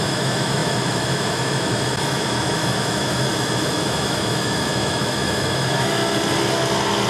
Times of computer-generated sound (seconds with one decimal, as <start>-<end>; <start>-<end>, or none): 0.0-6.0